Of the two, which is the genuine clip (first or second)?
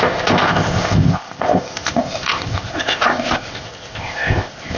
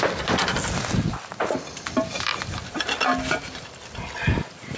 second